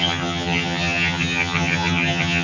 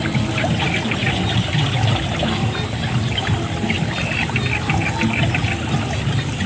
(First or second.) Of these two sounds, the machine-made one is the first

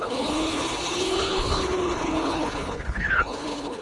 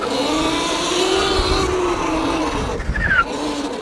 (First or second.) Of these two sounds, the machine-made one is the first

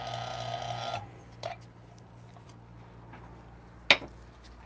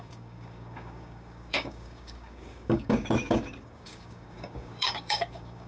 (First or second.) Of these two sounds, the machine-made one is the second